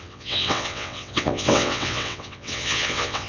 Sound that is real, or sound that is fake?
fake